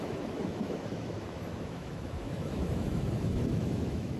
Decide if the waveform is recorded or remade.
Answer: remade